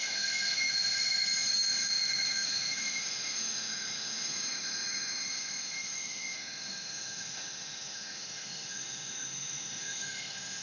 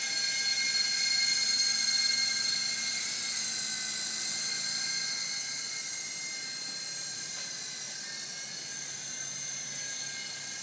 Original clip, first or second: second